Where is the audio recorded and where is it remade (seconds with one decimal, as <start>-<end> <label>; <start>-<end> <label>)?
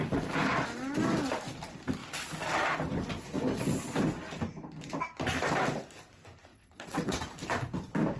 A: 0.0-6.5 recorded; 6.5-7.2 remade; 7.2-8.2 recorded